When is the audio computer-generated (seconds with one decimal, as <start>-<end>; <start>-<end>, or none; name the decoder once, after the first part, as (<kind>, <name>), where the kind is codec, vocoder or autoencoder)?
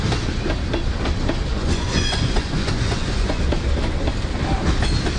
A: 1.5-3.4 (vocoder, Vocos)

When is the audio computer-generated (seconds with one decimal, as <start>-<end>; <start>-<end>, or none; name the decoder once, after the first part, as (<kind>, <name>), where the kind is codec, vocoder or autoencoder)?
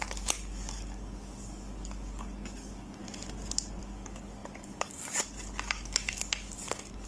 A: 0.0-3.0 (codec, DAC); 3.8-7.1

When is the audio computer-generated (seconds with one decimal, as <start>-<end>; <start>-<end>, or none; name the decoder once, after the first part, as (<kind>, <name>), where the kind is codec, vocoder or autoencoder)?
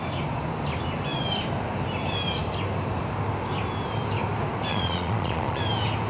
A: 4.7-5.6 (vocoder, Vocos)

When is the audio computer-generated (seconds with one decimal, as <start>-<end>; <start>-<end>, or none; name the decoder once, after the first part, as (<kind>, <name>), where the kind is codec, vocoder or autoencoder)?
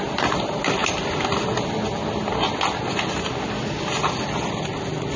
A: none